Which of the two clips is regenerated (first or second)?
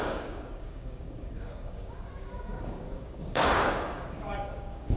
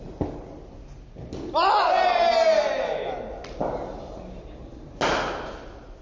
first